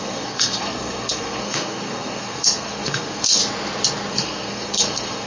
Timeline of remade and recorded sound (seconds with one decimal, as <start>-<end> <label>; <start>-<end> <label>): 0.0-3.4 remade; 3.4-4.1 recorded; 4.1-5.3 remade